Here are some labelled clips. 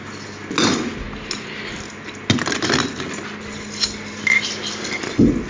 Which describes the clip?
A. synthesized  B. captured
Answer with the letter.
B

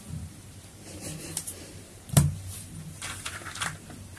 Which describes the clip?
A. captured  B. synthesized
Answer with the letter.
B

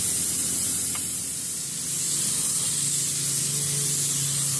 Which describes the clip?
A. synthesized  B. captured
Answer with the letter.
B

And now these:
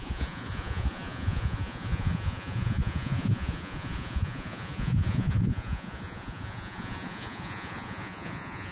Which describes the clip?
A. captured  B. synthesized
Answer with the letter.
B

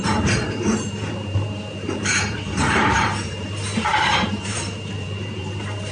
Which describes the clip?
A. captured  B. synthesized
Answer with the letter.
B